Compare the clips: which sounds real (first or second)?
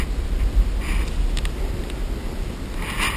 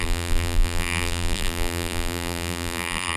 first